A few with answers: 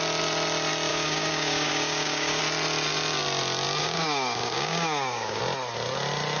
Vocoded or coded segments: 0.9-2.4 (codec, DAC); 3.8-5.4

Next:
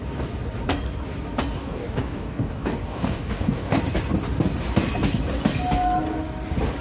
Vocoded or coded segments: 1.6-3.8 (codec, DAC)

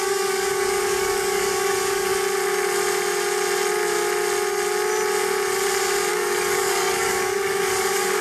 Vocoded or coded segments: 0.0-2.1 (codec, DAC); 6.1-8.2